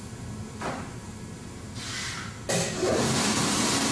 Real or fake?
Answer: real